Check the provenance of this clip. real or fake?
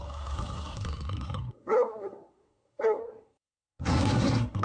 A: fake